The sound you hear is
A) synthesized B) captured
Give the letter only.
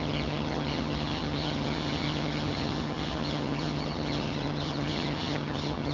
A